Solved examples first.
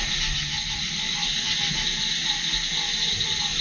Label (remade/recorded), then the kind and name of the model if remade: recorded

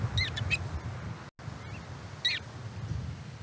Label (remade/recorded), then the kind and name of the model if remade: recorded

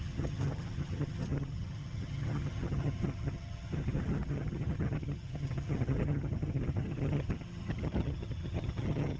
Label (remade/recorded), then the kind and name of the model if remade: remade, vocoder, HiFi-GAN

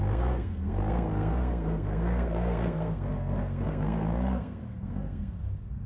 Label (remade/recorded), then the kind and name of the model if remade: remade, codec, SNAC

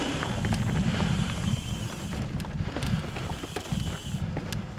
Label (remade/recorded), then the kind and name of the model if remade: recorded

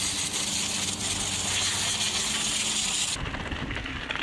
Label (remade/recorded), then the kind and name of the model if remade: recorded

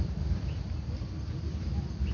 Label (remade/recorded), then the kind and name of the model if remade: recorded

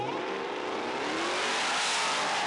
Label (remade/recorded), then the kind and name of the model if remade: recorded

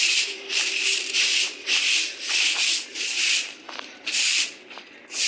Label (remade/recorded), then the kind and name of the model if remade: remade, vocoder, BigVGAN v2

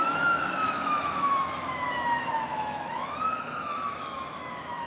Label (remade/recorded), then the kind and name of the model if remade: remade, autoencoder, DAC-VAE